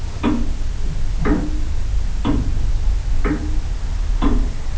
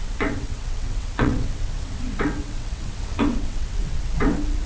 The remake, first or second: second